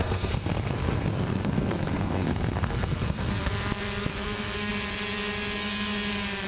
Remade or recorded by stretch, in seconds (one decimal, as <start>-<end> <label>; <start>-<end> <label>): 0.0-3.5 remade; 3.5-4.1 recorded; 4.1-4.7 remade; 4.7-6.5 recorded